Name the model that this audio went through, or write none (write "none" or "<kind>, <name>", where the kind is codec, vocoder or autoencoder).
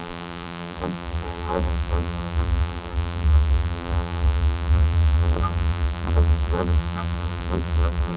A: vocoder, BigVGAN v2